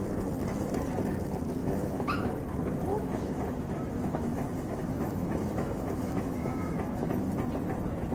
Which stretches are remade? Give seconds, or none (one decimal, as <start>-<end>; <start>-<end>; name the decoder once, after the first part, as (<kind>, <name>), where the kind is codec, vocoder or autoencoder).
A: 1.6-2.3 (autoencoder, DAC-VAE); 2.9-7.1